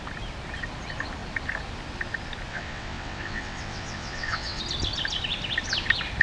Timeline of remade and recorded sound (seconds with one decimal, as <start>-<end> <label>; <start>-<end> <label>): 0.0-2.5 recorded; 2.5-4.6 remade; 4.6-6.2 recorded